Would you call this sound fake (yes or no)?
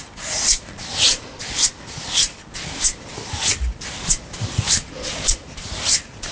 no